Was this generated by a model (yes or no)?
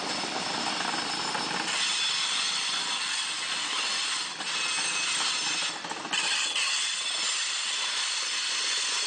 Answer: no